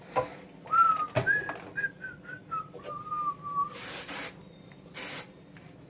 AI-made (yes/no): no